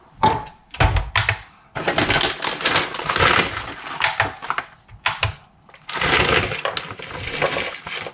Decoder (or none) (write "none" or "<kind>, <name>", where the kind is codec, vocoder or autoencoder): none